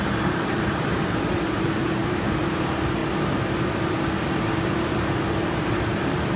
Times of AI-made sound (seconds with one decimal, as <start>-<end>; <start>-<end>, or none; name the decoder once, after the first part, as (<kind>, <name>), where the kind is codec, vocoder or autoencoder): 0.0-3.0 (vocoder, BigVGAN v2); 4.2-6.4